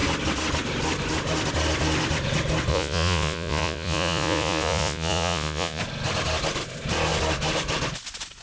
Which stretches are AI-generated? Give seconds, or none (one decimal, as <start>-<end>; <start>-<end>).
2.7-5.8